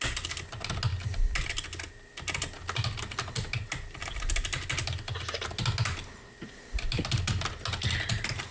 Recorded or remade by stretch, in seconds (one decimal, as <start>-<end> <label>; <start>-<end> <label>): 0.0-8.5 recorded